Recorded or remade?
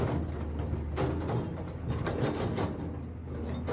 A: recorded